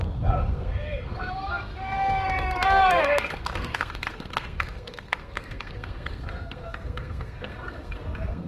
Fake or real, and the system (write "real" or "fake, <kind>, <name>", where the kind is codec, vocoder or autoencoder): fake, codec, SNAC